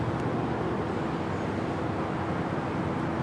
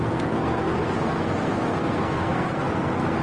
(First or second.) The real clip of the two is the first